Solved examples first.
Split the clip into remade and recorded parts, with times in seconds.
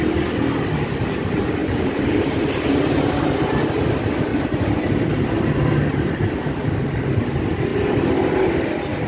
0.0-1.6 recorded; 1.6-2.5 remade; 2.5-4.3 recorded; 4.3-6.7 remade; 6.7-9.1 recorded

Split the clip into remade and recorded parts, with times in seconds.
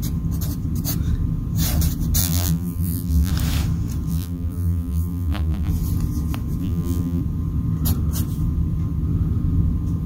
0.0-2.2 recorded; 2.2-3.3 remade; 3.3-4.1 recorded; 4.1-5.7 remade; 5.7-6.6 recorded; 6.6-7.2 remade; 7.2-10.1 recorded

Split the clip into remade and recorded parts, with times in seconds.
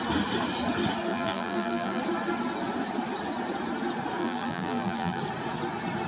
0.0-1.1 recorded; 1.1-2.0 remade; 2.0-4.2 recorded; 4.2-5.2 remade; 5.2-6.1 recorded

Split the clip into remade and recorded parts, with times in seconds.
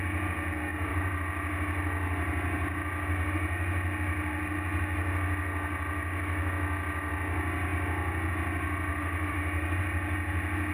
0.0-0.7 recorded; 0.7-1.3 remade; 1.3-8.9 recorded; 8.9-9.8 remade; 9.8-10.7 recorded